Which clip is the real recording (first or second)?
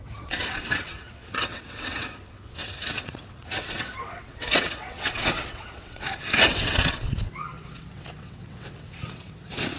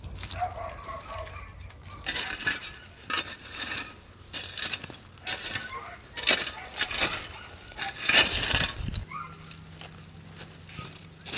second